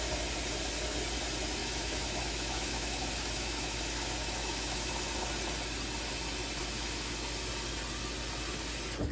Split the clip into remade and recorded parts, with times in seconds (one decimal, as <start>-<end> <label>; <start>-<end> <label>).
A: 0.0-1.6 recorded; 1.6-4.9 remade; 4.9-6.6 recorded; 6.6-7.1 remade; 7.1-9.1 recorded